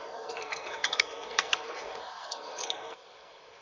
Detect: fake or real fake